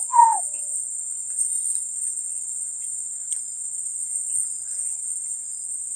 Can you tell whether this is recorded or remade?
remade